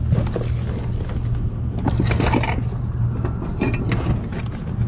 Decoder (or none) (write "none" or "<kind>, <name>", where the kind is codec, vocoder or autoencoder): none